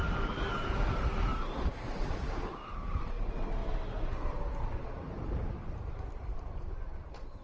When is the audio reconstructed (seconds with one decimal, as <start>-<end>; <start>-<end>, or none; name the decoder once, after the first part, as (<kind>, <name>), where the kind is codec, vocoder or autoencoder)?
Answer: none